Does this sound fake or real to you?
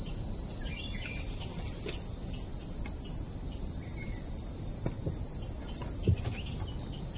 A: real